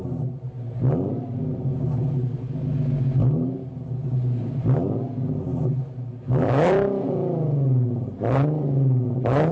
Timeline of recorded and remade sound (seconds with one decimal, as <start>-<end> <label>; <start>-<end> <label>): 0.0-9.5 recorded